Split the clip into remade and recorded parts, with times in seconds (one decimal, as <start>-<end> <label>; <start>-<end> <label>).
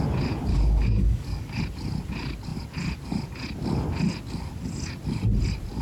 0.0-0.5 recorded; 0.5-1.6 remade; 1.6-5.8 recorded